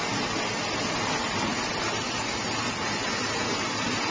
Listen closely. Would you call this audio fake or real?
real